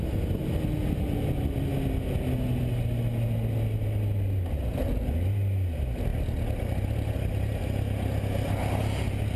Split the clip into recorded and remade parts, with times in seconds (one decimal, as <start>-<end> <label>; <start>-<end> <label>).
0.0-9.4 recorded